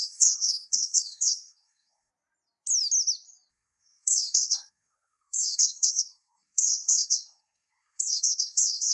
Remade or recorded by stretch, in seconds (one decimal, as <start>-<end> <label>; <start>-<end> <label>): 0.0-2.1 remade; 2.1-3.5 recorded; 3.5-8.9 remade